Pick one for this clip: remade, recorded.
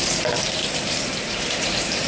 remade